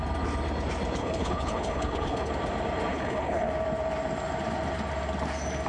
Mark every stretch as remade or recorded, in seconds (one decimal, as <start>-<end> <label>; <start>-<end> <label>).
0.0-1.0 recorded; 1.0-2.3 remade; 2.3-2.9 recorded; 2.9-3.5 remade; 3.5-5.7 recorded